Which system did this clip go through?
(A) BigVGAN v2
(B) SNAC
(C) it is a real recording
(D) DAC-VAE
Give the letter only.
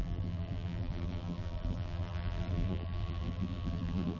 A